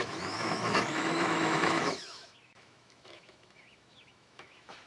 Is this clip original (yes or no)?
no